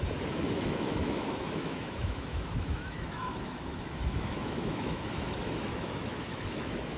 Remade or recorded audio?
remade